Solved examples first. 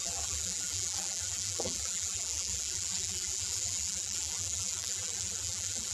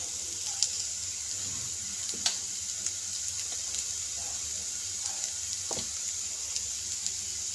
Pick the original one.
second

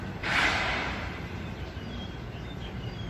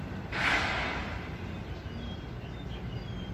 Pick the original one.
second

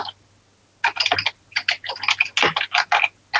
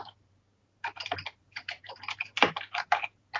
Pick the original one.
first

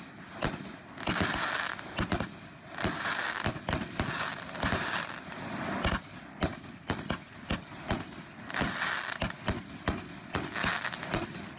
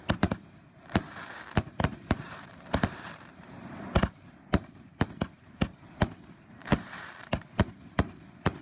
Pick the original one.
first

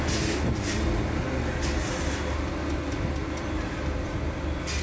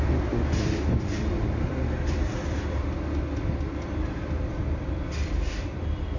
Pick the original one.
first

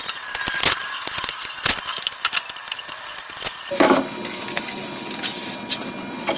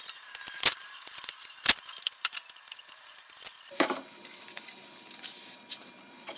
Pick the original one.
first